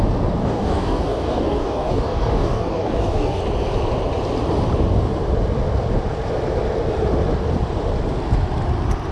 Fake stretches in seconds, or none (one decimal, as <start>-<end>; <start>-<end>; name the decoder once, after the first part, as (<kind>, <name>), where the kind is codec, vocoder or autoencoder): 0.4-3.4 (codec, DAC)

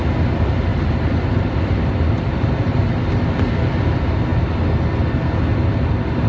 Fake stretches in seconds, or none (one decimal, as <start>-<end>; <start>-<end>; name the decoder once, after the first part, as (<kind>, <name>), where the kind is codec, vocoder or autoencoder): none

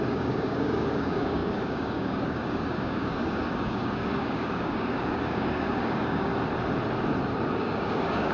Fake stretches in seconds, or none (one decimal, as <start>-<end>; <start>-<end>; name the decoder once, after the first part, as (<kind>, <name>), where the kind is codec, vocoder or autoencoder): 0.0-6.3 (codec, DAC); 7.6-8.3